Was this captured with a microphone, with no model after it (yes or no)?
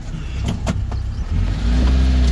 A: yes